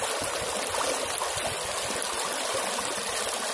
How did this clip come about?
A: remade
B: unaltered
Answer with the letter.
B